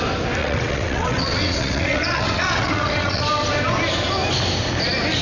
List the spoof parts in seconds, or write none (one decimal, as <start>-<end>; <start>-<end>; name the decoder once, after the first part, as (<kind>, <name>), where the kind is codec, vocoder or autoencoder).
0.4-3.2 (vocoder, WaveNeXt)

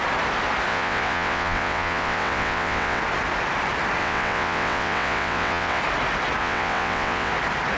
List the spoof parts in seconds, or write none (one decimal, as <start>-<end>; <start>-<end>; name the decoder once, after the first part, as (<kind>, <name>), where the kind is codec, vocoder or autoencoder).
0.7-3.0 (vocoder, WaveNeXt); 4.0-5.8; 6.4-7.3

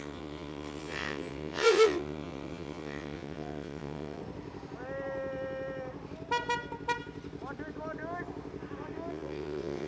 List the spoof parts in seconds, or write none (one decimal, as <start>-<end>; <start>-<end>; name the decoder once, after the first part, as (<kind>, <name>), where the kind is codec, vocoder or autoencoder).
0.0-4.2 (vocoder, WaveNeXt); 9.1-9.9

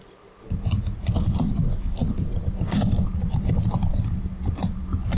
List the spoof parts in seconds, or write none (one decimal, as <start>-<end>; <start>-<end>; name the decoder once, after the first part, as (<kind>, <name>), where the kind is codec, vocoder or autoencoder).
none